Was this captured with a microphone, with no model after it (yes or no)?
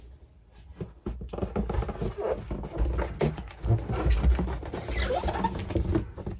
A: yes